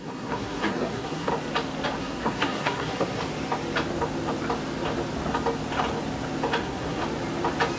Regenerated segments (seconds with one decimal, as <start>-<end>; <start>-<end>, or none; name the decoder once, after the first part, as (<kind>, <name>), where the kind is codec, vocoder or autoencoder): 0.0-1.3 (codec, SNAC); 2.0-3.2; 6.6-7.0